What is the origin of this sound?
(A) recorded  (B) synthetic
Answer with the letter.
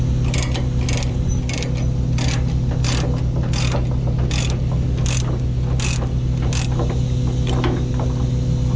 A